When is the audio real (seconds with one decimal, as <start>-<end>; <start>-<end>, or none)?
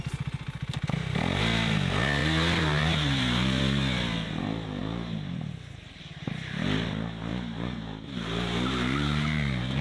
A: 0.0-2.2; 3.6-4.8; 5.5-7.3